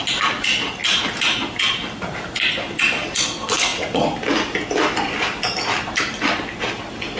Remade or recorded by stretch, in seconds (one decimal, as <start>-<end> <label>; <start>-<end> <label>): 0.0-0.8 remade; 0.8-2.1 recorded; 2.1-7.2 remade